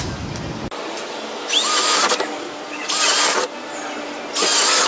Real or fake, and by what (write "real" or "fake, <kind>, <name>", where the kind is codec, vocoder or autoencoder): real